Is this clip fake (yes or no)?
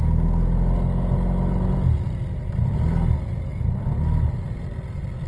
no